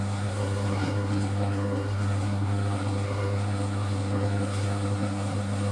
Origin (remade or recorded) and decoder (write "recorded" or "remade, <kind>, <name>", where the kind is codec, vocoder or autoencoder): remade, codec, SNAC